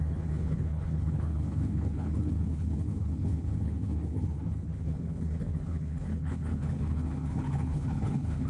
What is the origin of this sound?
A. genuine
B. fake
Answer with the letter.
B